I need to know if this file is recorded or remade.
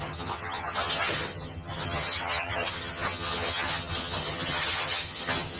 remade